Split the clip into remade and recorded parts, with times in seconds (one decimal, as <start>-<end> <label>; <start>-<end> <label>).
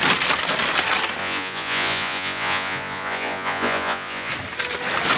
0.0-1.2 recorded; 1.2-4.3 remade; 4.3-5.2 recorded